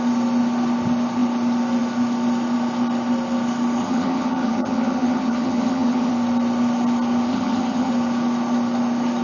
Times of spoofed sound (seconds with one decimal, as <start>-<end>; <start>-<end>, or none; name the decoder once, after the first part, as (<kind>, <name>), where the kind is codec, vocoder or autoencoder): 3.8-6.1 (vocoder, HiFi-GAN); 7.3-7.9